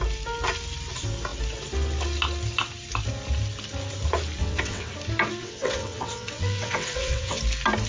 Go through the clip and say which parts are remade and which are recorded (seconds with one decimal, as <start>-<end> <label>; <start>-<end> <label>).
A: 0.0-4.4 recorded; 4.4-4.9 remade; 4.9-5.4 recorded; 5.4-7.4 remade; 7.4-7.9 recorded